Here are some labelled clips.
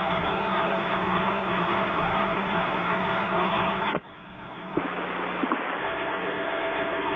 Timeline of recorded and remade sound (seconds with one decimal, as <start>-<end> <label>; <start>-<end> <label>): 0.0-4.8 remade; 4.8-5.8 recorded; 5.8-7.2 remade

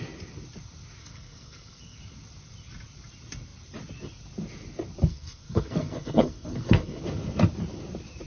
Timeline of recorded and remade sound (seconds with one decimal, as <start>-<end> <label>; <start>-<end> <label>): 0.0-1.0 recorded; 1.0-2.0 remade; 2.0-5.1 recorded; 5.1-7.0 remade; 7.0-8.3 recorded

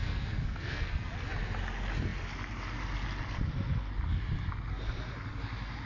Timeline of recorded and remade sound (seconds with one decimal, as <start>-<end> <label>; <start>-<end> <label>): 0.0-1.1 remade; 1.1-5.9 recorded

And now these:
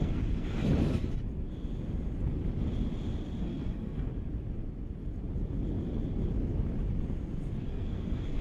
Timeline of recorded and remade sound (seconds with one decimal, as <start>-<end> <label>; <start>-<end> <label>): 0.0-0.6 remade; 0.6-3.4 recorded; 3.4-4.1 remade; 4.1-7.6 recorded; 7.6-8.4 remade

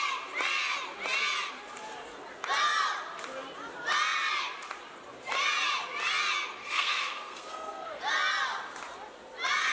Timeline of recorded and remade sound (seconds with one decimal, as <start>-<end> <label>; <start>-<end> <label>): 0.0-6.6 recorded; 6.6-8.0 remade; 8.0-9.7 recorded

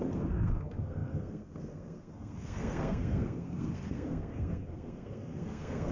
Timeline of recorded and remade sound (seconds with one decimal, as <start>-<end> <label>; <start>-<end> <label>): 0.0-5.9 remade